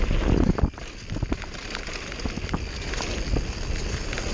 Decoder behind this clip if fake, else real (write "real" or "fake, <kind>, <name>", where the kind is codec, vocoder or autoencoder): real